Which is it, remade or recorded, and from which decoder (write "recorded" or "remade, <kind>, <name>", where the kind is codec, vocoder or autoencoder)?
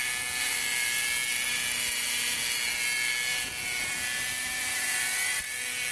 recorded